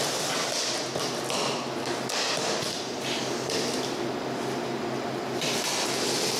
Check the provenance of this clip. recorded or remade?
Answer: recorded